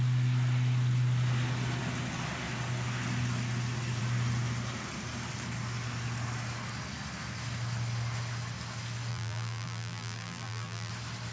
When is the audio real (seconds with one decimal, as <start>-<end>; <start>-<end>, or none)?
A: 0.0-9.1; 10.9-11.3